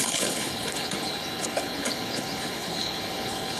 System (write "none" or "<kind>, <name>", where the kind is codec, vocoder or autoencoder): codec, HILCodec